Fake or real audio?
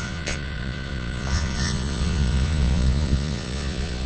fake